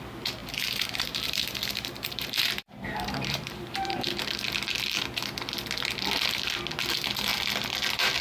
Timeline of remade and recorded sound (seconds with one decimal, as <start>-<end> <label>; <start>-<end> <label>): 0.0-0.4 recorded; 0.4-4.2 remade; 4.2-8.2 recorded

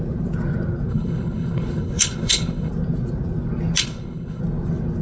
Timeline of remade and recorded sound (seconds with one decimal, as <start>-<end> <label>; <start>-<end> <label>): 0.0-0.9 recorded; 0.9-2.7 remade; 2.7-3.8 recorded; 3.8-4.4 remade; 4.4-5.0 recorded